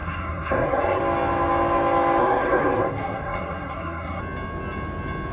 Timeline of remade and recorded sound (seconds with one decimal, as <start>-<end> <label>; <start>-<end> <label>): 0.0-1.0 remade; 1.0-2.2 recorded; 2.2-4.2 remade; 4.2-5.3 recorded